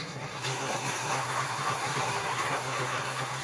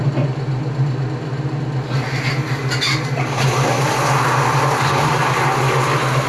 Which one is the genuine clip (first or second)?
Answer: second